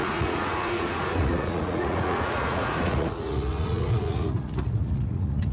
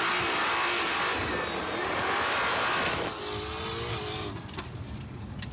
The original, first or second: second